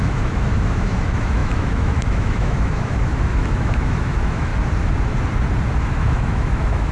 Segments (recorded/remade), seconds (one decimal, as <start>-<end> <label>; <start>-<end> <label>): 0.0-4.5 remade; 4.5-5.8 recorded; 5.8-6.9 remade